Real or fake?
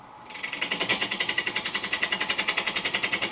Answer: real